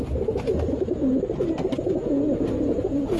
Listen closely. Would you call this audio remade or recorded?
recorded